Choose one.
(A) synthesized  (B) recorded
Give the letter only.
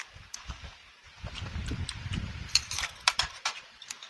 A